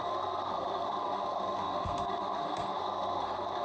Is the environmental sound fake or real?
fake